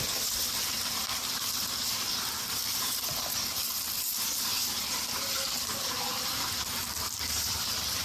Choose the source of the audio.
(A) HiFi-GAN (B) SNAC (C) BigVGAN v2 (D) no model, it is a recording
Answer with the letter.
C